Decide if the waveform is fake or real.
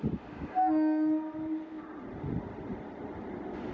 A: real